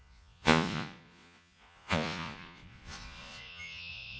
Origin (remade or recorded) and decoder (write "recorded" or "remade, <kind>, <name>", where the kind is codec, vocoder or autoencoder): remade, vocoder, Vocos